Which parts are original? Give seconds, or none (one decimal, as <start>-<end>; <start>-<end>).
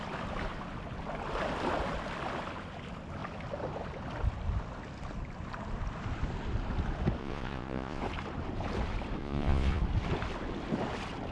0.0-7.2; 8.0-9.2; 9.8-11.3